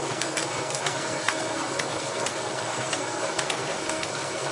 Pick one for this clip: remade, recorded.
remade